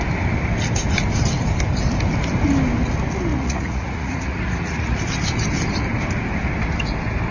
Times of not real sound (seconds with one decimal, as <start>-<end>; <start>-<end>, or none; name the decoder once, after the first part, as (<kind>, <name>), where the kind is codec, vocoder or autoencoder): 3.3-5.0 (vocoder, Vocos)